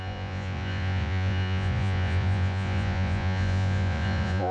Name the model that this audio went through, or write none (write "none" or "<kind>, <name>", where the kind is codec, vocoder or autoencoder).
vocoder, Vocos